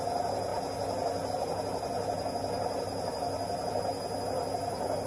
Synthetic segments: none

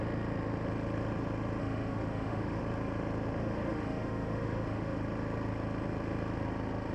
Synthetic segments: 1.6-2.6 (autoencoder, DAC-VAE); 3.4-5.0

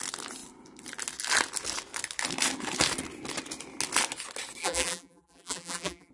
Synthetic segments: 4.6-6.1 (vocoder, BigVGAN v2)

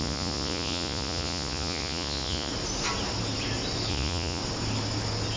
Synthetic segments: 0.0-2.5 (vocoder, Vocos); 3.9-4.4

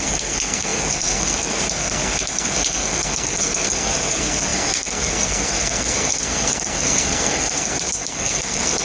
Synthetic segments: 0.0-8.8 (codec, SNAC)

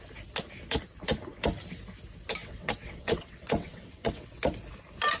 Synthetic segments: 2.4-4.4 (vocoder, WaveNeXt)

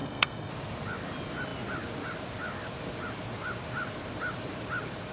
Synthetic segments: 0.0-0.5 (codec, SNAC)

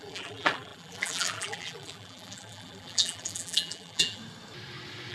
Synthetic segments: 0.0-4.2 (vocoder, BigVGAN v2)